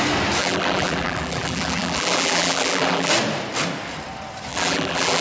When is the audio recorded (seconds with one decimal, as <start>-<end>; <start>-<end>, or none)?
0.0-0.4; 3.1-4.5